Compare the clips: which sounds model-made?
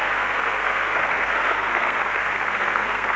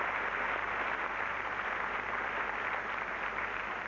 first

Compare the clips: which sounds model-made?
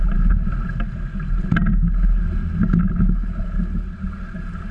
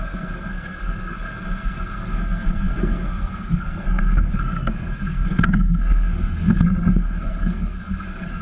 second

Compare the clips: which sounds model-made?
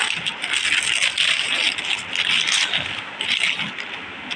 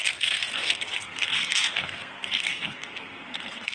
second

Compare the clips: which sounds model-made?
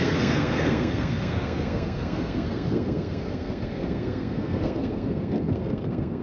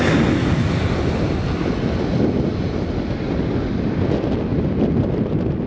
first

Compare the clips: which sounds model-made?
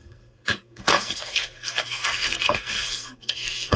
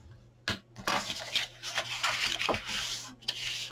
first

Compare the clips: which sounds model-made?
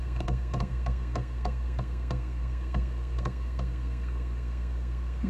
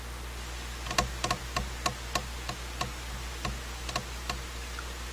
first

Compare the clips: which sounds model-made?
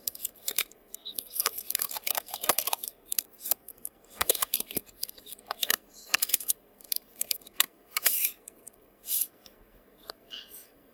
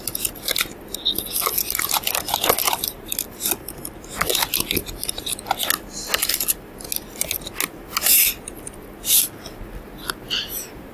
first